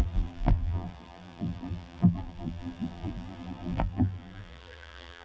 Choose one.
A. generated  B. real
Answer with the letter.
A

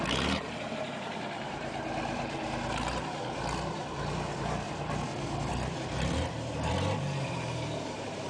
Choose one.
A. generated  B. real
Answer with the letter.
A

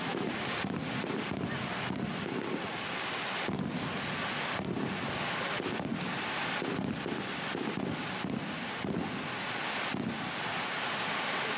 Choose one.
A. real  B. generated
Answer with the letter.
A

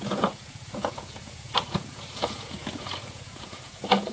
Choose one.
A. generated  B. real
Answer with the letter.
A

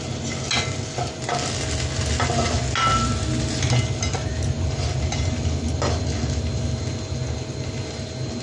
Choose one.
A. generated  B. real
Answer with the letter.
B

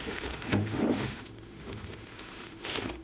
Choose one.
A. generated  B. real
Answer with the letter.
A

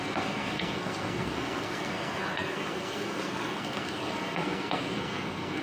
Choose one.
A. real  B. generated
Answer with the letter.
B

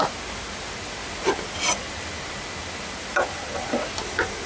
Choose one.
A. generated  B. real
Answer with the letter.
B